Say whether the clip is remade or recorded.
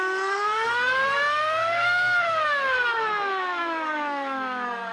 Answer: remade